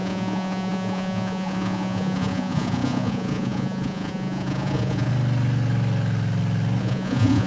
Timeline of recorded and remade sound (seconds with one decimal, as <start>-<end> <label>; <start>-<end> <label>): 0.0-5.1 remade; 5.1-6.8 recorded; 6.8-7.5 remade